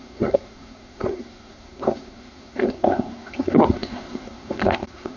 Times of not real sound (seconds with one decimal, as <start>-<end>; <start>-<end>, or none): 0.0-5.2